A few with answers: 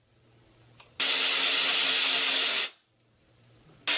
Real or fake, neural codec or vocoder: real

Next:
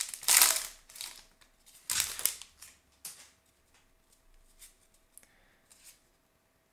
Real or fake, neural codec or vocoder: real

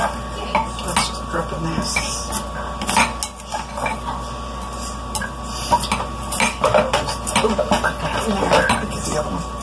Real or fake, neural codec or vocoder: real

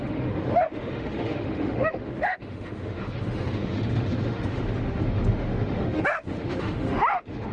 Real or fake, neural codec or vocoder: fake, autoencoder, DAC-VAE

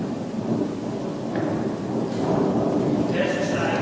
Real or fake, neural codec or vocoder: real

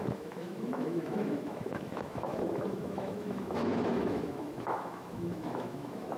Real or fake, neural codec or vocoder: fake, autoencoder, DAC-VAE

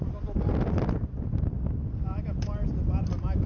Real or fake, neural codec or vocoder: real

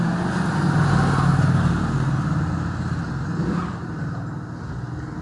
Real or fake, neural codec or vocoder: real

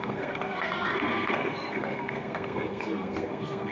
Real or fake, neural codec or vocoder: fake, codec, SNAC